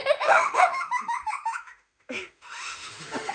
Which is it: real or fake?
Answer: fake